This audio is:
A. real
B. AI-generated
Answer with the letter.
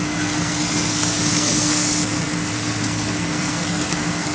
B